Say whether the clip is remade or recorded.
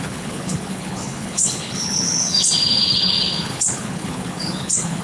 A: remade